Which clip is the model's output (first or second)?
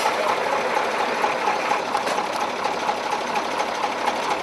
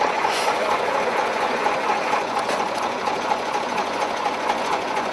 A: second